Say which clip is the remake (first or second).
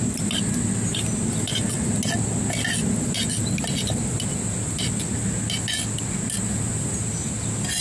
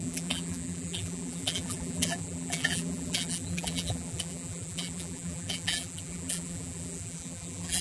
second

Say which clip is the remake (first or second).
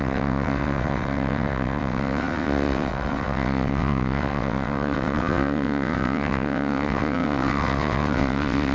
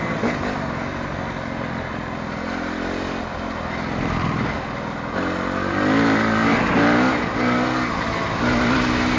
first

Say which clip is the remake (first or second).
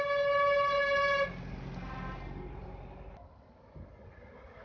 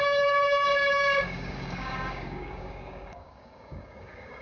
second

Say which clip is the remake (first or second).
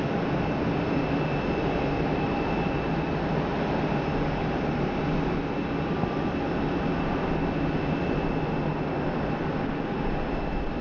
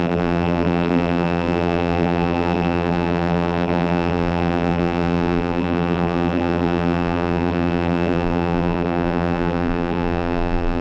second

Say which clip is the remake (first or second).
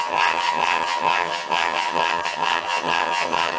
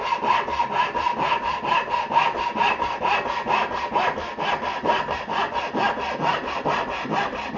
first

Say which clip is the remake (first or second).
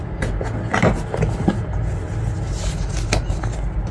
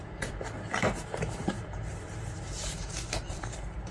second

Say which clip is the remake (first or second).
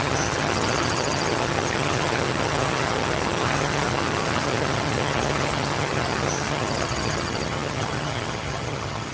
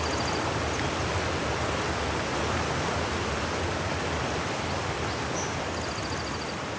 first